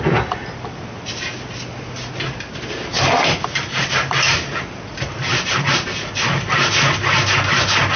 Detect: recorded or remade recorded